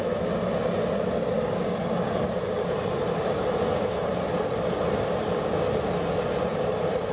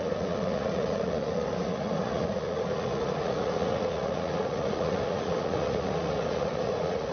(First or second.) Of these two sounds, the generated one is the second